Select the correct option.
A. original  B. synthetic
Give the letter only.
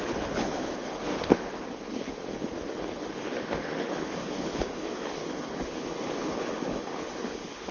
B